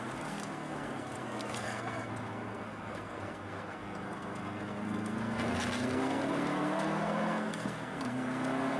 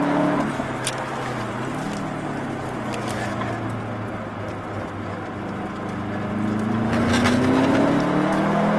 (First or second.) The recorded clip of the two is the second